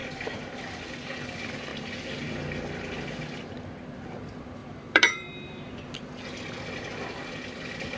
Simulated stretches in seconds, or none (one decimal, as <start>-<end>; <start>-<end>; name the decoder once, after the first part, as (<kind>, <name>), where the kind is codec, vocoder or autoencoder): 4.6-5.7 (vocoder, BigVGAN v2)